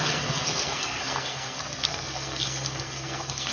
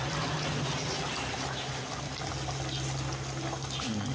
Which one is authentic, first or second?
second